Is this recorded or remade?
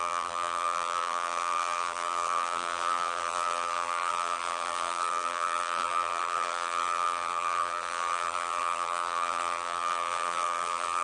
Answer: remade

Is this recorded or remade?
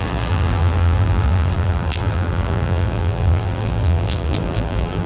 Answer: remade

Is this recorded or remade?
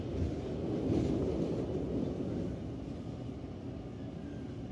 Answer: recorded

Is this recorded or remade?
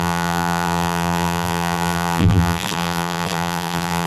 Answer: remade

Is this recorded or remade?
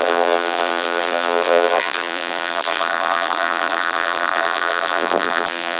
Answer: remade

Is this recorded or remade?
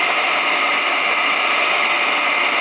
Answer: remade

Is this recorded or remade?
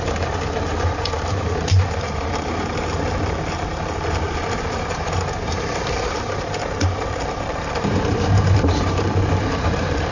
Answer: remade